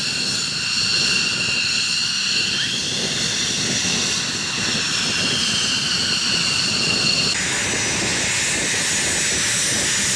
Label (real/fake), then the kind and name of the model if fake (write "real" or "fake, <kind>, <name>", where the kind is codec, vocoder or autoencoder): real